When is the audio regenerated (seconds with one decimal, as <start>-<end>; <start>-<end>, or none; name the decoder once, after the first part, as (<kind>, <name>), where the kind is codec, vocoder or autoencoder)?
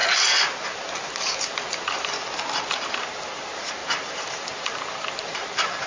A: 3.0-5.9 (vocoder, BigVGAN v2)